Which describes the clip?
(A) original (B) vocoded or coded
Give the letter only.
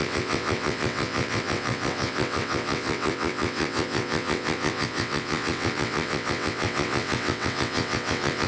B